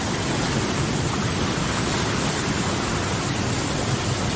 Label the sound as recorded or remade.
recorded